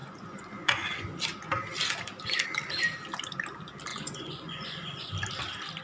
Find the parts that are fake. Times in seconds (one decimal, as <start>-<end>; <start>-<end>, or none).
0.0-1.2; 3.9-5.1